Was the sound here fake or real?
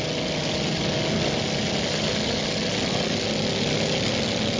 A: real